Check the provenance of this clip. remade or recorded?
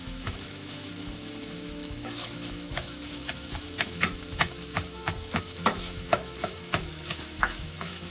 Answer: remade